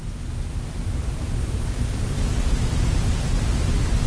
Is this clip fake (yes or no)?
no